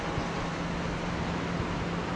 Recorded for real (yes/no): yes